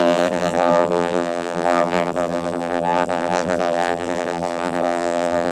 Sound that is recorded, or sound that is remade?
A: remade